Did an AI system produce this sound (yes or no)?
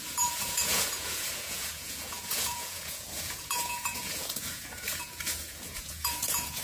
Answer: yes